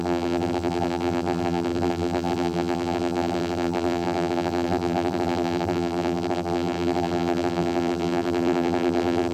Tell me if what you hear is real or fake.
fake